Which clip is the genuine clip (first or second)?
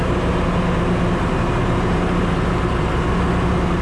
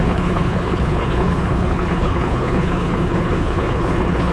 first